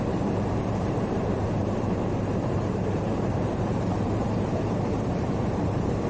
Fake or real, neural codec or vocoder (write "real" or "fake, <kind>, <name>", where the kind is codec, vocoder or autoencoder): fake, vocoder, BigVGAN v2